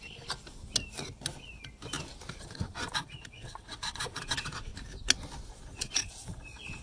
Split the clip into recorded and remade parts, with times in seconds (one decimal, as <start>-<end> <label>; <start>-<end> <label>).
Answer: 0.0-2.3 recorded; 2.3-4.7 remade; 4.7-5.5 recorded; 5.5-6.8 remade

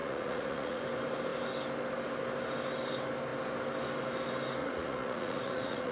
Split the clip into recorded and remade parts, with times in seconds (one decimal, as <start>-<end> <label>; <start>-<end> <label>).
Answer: 0.0-0.8 remade; 0.8-4.6 recorded; 4.6-5.9 remade

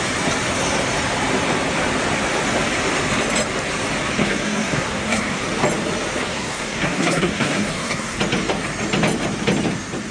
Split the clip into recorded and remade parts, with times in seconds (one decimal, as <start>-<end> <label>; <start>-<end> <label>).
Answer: 0.0-4.2 recorded; 4.2-5.4 remade; 5.4-6.3 recorded; 6.3-8.2 remade; 8.2-10.1 recorded

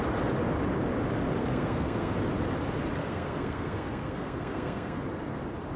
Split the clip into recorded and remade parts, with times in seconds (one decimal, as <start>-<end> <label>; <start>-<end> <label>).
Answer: 0.0-1.4 recorded; 1.4-2.1 remade; 2.1-3.0 recorded; 3.0-5.0 remade; 5.0-5.8 recorded

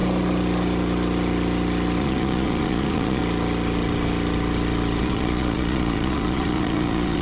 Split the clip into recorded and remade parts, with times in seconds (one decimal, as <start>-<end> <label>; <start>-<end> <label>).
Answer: 0.0-2.0 recorded; 2.0-3.2 remade; 3.2-5.0 recorded; 5.0-7.2 remade

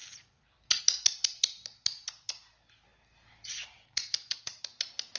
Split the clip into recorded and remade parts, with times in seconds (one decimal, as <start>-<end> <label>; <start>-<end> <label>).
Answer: 0.0-5.2 recorded

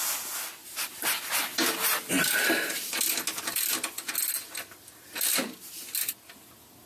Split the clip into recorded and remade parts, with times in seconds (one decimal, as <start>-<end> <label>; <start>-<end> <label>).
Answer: 0.0-0.6 recorded; 0.6-3.0 remade; 3.0-6.9 recorded

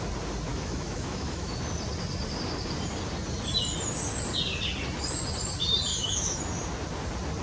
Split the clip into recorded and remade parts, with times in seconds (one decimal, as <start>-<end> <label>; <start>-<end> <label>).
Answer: 0.0-0.5 recorded; 0.5-1.5 remade; 1.5-5.9 recorded; 5.9-6.4 remade; 6.4-7.4 recorded